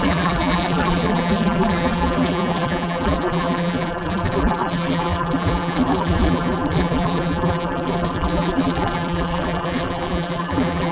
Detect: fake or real fake